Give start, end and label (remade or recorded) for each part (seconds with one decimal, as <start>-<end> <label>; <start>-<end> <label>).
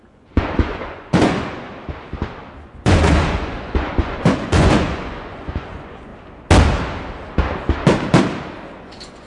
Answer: 0.0-1.7 remade; 1.7-2.6 recorded; 2.6-6.1 remade; 6.1-8.8 recorded; 8.8-9.3 remade